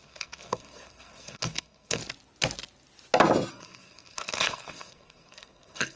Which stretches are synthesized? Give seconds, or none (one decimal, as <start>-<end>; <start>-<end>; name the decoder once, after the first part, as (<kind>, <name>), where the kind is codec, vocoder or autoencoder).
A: 0.0-2.0 (codec, SNAC); 3.5-6.0